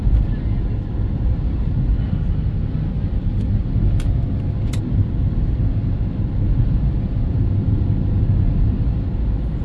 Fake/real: real